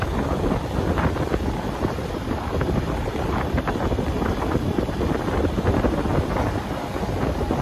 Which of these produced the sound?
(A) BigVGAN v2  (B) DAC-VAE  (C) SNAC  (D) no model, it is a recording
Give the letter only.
D